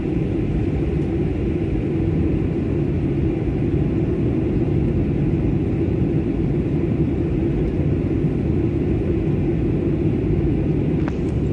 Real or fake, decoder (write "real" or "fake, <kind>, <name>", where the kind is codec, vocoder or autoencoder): real